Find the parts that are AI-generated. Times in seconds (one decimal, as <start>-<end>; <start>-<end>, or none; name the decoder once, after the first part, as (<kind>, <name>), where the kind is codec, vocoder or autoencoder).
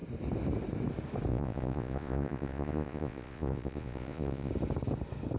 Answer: 1.3-4.5 (vocoder, Vocos)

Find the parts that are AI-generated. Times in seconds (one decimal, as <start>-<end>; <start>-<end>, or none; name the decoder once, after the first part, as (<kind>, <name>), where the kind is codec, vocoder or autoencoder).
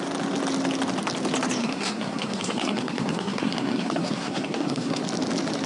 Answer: 1.6-5.0 (codec, SNAC)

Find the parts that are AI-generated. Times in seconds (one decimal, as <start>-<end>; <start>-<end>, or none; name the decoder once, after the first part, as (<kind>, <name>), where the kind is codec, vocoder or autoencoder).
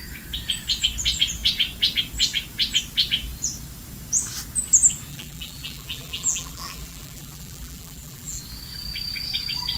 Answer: 5.1-8.4 (vocoder, BigVGAN v2)